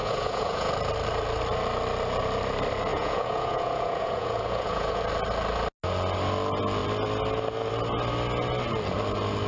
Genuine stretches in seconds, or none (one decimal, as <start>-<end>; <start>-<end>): 0.7-2.9; 5.0-9.5